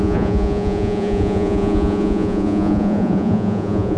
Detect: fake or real fake